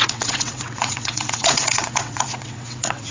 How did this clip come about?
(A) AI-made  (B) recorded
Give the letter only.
A